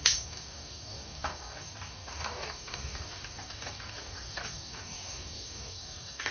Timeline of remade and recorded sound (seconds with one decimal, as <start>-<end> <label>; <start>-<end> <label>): 0.0-6.3 remade